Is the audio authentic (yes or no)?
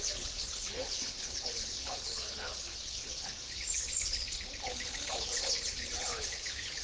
no